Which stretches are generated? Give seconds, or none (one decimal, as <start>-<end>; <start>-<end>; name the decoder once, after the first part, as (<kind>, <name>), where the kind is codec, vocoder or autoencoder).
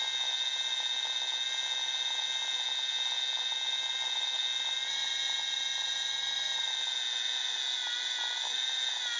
none